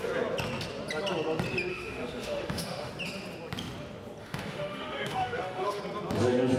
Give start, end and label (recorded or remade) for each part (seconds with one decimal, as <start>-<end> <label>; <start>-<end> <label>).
0.0-1.7 recorded; 1.7-2.9 remade; 2.9-4.2 recorded; 4.2-5.8 remade; 5.8-6.6 recorded